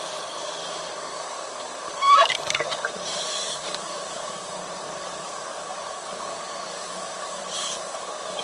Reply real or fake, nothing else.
fake